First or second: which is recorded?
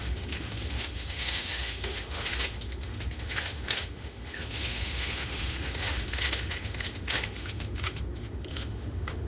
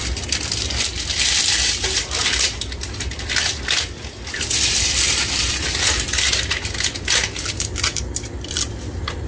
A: second